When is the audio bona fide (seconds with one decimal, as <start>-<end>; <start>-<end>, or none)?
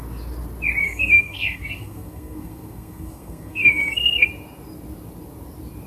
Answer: 0.0-0.8; 4.3-5.9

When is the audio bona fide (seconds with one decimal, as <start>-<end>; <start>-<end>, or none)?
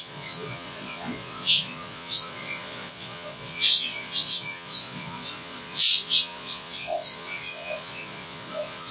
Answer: none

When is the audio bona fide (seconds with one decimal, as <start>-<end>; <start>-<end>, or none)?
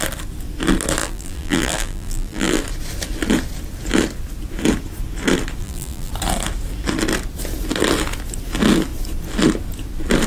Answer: 0.0-1.0; 2.6-5.6; 6.1-10.3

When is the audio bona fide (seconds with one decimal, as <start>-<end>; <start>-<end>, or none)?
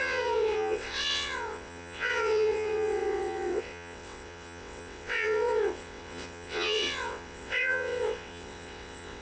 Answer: none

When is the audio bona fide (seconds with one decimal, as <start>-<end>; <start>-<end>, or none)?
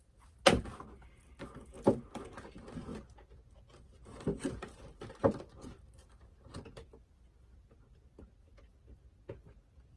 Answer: 0.0-10.0